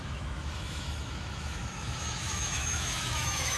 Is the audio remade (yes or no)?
yes